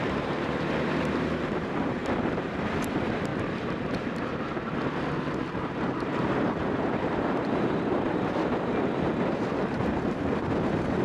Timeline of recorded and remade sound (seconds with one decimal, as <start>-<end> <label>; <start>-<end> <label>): 0.0-3.3 remade; 3.3-5.6 recorded; 5.6-11.0 remade